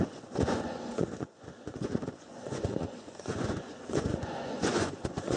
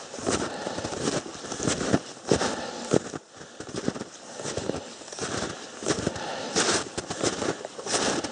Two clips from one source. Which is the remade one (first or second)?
first